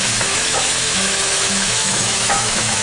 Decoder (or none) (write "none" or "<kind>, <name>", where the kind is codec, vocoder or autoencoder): autoencoder, DAC-VAE